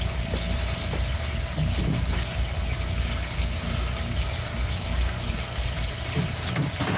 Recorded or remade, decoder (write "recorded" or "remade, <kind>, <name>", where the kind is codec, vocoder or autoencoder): recorded